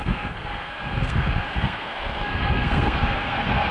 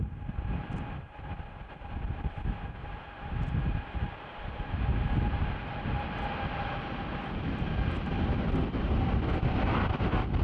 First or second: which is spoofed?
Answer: first